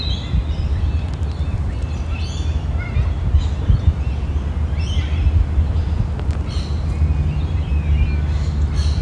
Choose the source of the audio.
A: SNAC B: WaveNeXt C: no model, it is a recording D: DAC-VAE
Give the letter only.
C